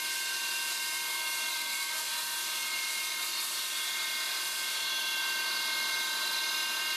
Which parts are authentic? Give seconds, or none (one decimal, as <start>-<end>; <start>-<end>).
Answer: 0.0-1.5; 2.4-7.0